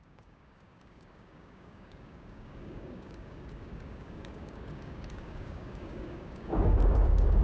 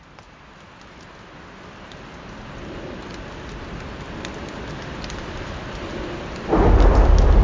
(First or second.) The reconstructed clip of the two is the first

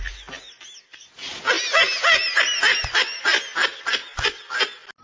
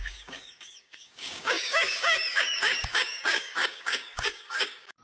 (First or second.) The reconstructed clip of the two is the second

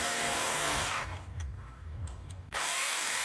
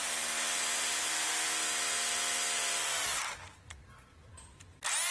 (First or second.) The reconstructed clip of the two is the first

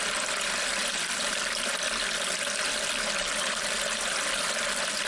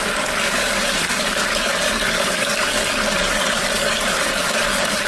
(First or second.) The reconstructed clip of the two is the second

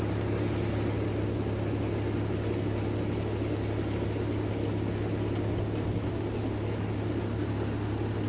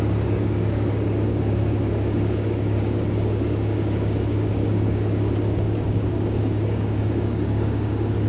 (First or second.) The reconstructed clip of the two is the second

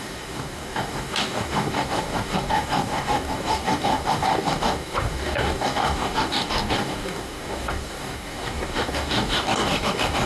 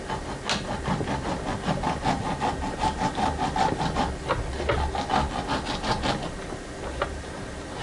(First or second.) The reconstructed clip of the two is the first